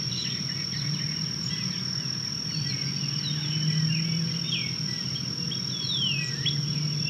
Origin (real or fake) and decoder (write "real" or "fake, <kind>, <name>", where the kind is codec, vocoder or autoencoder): real